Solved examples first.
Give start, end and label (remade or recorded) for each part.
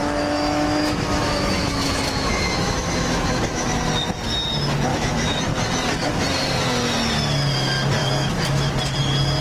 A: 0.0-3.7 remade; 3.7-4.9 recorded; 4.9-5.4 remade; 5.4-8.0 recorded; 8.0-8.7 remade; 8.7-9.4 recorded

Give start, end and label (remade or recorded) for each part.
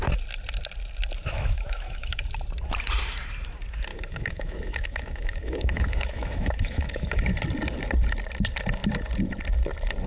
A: 0.0-1.2 recorded; 1.2-2.2 remade; 2.2-3.9 recorded; 3.9-7.3 remade; 7.3-10.1 recorded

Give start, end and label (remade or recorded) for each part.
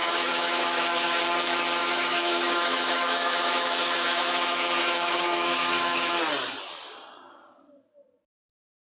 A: 0.0-1.2 remade; 1.2-1.8 recorded; 1.8-6.2 remade; 6.2-8.9 recorded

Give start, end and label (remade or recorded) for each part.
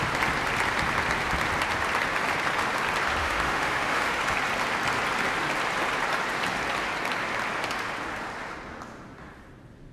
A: 0.0-3.2 recorded; 3.2-4.2 remade; 4.2-9.9 recorded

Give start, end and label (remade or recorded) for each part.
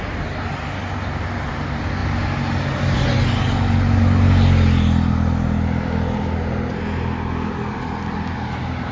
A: 0.0-8.9 recorded